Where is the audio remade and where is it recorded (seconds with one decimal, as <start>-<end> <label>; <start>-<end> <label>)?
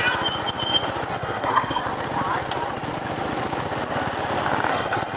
0.0-1.1 recorded; 1.1-1.8 remade; 1.8-4.7 recorded; 4.7-5.2 remade